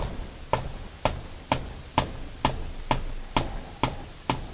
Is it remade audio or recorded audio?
recorded